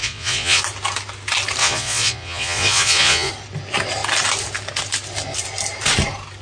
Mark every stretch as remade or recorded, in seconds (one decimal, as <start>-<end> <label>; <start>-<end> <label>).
0.0-0.6 remade; 0.6-1.6 recorded; 1.6-3.3 remade; 3.3-6.4 recorded